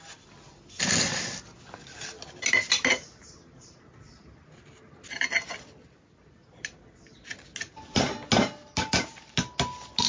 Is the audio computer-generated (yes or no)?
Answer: no